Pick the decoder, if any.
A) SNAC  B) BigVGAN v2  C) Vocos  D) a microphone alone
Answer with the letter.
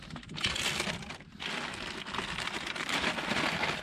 D